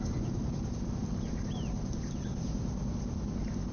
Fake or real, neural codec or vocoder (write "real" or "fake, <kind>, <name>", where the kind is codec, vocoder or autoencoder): fake, vocoder, BigVGAN v2